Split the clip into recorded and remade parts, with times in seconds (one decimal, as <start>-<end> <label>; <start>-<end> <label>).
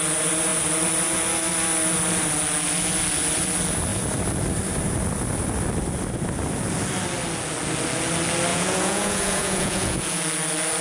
0.0-8.5 recorded; 8.5-10.2 remade; 10.2-10.8 recorded